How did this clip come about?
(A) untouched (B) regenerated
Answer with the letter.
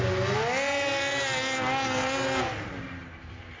A